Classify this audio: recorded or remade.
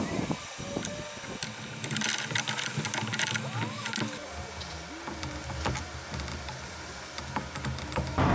recorded